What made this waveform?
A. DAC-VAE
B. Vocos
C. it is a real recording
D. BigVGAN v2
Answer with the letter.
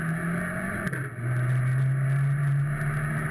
C